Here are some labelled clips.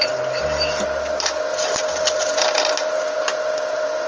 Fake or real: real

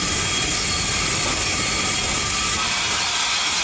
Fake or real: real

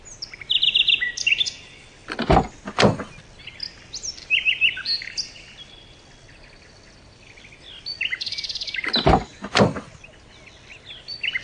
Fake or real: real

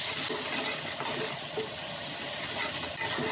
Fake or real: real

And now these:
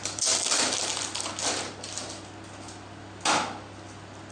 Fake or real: real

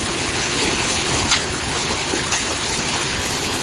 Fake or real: fake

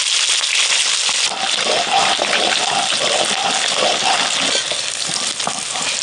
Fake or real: real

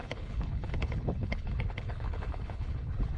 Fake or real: fake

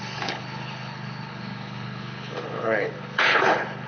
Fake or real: fake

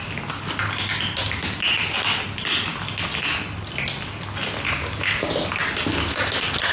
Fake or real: real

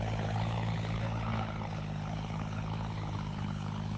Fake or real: fake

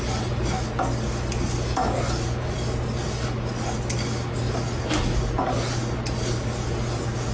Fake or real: real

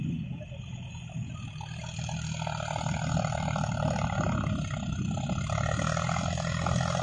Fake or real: real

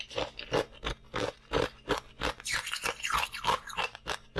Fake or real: real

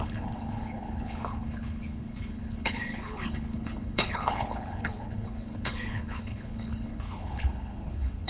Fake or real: fake